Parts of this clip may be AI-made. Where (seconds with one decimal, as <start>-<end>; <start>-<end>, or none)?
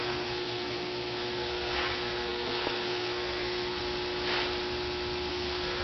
0.0-3.8; 5.3-5.8